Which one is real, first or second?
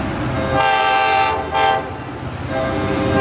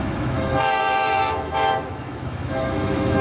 first